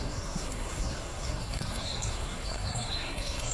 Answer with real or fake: fake